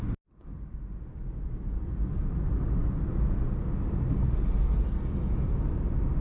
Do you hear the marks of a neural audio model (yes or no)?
no